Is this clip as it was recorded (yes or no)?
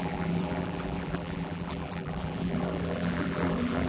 no